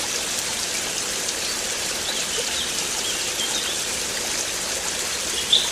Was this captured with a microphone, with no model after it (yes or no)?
no